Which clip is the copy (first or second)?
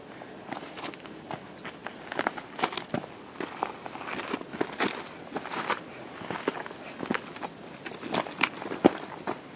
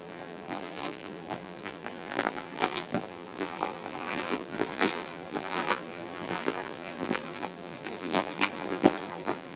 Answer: second